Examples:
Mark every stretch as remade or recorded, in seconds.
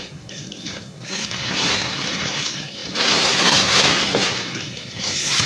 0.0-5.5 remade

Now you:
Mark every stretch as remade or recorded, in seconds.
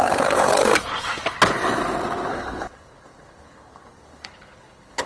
0.0-0.7 remade; 0.7-2.3 recorded; 2.3-5.1 remade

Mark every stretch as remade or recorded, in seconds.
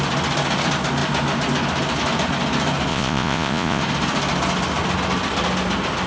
0.0-2.9 recorded; 2.9-3.8 remade; 3.8-6.1 recorded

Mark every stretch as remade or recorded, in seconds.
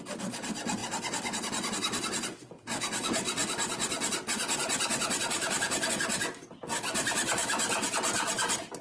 0.0-8.8 recorded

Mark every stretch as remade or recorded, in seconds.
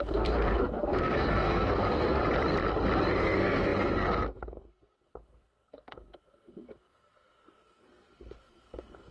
0.0-2.2 remade; 2.2-3.1 recorded; 3.1-9.1 remade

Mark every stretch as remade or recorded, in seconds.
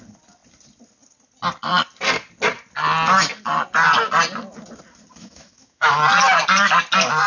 0.0-5.2 recorded; 5.2-6.0 remade; 6.0-7.3 recorded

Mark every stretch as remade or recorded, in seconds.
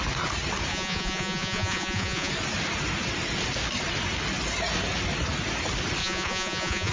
0.0-0.7 recorded; 0.7-2.3 remade; 2.3-6.0 recorded; 6.0-6.9 remade